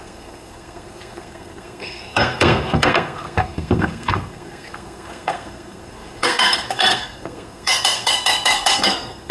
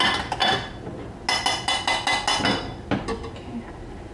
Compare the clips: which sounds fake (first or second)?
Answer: first